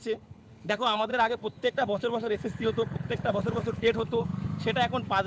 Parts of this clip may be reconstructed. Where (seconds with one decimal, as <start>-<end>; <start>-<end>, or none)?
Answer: 0.0-4.3